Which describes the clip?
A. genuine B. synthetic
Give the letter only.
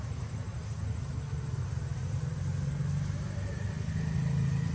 A